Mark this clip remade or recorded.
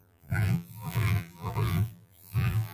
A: remade